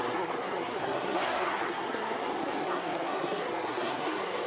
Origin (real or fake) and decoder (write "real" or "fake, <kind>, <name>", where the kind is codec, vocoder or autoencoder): fake, codec, SNAC